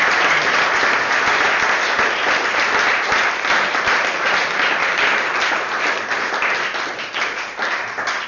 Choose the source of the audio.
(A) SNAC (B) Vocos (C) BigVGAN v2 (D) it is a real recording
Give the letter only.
D